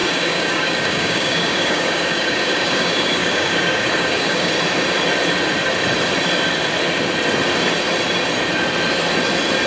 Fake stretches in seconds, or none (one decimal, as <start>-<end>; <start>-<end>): 0.0-4.5